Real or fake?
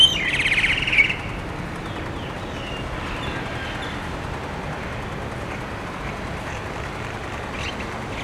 real